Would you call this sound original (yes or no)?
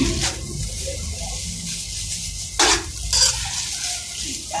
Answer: yes